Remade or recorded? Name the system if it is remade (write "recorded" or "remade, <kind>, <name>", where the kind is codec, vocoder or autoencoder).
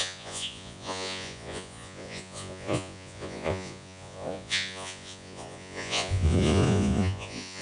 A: remade, vocoder, Vocos